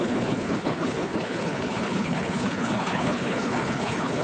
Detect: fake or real fake